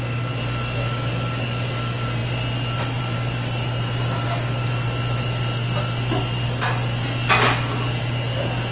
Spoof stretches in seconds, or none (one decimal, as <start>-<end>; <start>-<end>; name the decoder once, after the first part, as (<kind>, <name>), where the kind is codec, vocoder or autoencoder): none